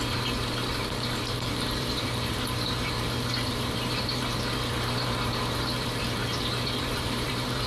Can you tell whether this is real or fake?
fake